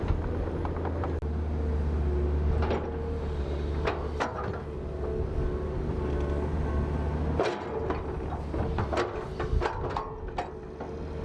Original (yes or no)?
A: yes